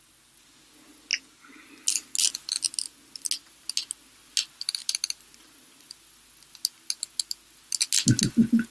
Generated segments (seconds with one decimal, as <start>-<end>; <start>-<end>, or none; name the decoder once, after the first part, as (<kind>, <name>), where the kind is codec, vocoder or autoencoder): none